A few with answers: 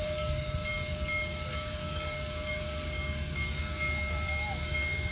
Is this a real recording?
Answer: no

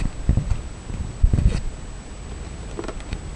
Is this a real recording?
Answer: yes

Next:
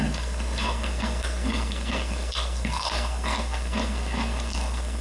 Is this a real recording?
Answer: no